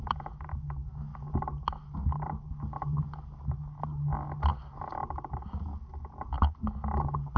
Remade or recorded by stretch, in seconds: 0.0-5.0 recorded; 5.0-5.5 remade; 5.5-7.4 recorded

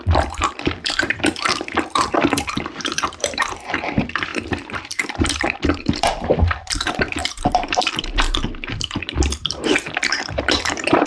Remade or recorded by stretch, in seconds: 0.0-11.1 remade